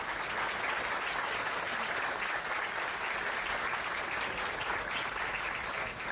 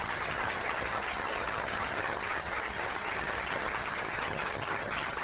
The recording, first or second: first